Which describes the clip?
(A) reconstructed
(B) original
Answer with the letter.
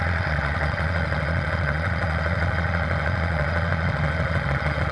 A